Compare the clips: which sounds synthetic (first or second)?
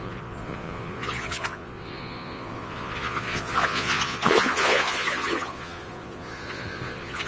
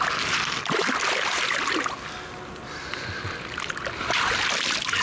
first